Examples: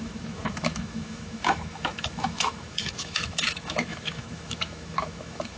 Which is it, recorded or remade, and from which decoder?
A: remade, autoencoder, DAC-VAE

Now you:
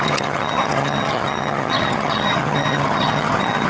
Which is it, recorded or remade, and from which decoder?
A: remade, vocoder, HiFi-GAN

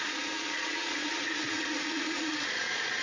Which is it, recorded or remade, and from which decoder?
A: remade, vocoder, Vocos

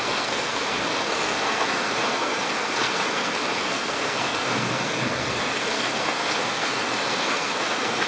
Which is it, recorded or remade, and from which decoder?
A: remade, codec, SNAC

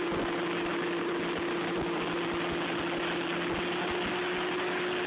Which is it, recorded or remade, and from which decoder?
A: recorded